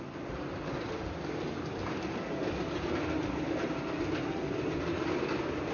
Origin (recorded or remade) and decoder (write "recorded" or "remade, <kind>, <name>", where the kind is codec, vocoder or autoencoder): recorded